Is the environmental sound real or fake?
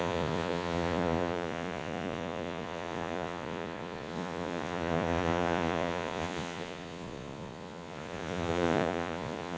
fake